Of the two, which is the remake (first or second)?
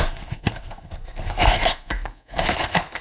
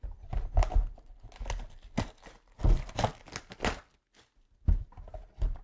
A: first